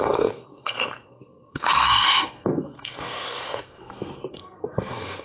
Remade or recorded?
remade